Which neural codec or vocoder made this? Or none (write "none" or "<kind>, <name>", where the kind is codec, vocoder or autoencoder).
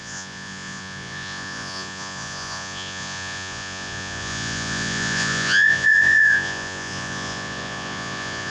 vocoder, Vocos